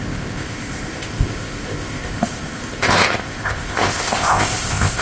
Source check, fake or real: fake